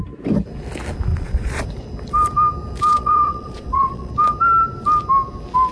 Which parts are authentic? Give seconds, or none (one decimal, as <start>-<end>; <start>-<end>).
0.0-1.1; 1.6-2.9; 4.1-5.7